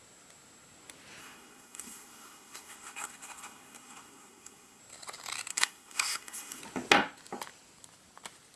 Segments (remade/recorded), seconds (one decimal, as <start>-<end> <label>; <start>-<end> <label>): 0.0-1.2 recorded; 1.2-4.8 remade; 4.8-5.5 recorded; 5.5-6.6 remade; 6.6-8.6 recorded